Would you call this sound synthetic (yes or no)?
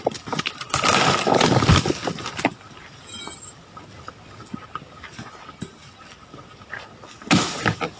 no